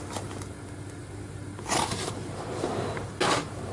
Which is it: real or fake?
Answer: real